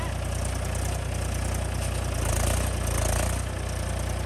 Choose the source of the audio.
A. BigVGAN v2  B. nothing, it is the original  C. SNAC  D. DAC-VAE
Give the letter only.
B